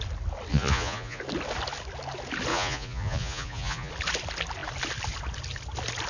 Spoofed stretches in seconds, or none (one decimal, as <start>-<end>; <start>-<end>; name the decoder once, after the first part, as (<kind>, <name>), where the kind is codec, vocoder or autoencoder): 0.5-1.2 (vocoder, Vocos); 2.5-3.9